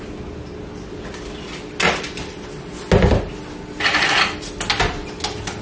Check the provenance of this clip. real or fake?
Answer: real